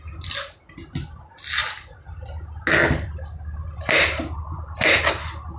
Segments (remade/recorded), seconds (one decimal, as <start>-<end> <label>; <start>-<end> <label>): 0.0-5.6 recorded